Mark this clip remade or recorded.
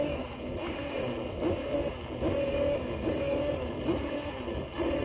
recorded